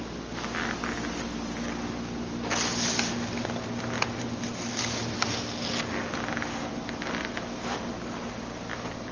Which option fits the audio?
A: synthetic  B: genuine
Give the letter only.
B